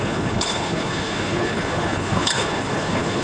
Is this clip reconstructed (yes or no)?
yes